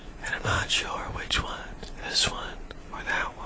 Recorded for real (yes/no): no